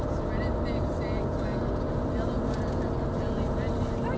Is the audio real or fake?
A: real